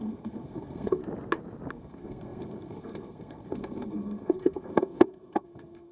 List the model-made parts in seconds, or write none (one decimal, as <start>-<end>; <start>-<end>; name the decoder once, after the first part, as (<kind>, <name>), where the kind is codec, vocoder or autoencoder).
0.0-1.0 (codec, SNAC); 1.7-5.9